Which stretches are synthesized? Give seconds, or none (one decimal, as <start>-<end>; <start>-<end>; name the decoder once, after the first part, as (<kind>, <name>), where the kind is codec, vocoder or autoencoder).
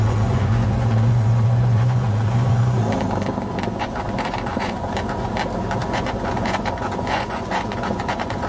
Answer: 0.0-2.8 (vocoder, Vocos); 3.8-5.3; 5.8-8.5